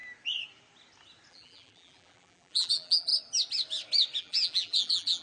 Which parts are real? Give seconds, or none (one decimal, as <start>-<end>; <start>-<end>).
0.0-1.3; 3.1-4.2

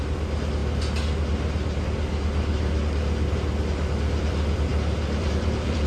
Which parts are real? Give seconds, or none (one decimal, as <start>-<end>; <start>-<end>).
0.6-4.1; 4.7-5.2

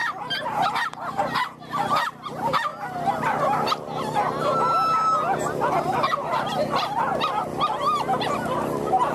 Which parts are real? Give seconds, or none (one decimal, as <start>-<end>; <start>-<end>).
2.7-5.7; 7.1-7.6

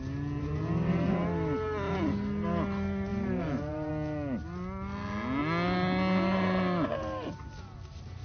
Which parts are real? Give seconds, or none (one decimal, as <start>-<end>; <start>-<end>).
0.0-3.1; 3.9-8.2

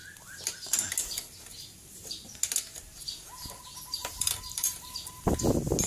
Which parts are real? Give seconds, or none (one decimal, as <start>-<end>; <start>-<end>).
0.0-4.0; 5.2-5.9

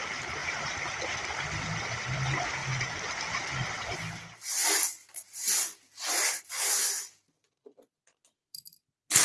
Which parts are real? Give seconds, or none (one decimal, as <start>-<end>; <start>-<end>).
0.0-5.0; 6.5-9.2